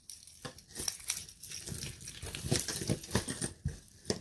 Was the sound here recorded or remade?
recorded